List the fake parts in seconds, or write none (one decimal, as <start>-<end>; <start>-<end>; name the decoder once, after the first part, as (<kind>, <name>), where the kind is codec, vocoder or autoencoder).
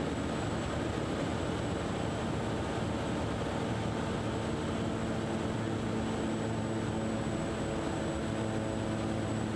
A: none